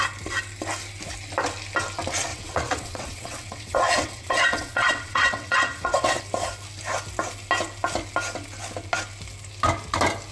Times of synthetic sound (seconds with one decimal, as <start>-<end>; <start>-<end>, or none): 2.3-6.2